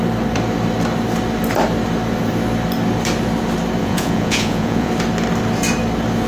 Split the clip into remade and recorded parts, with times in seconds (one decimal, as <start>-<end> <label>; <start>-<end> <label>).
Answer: 0.0-3.8 recorded; 3.8-4.9 remade; 4.9-6.3 recorded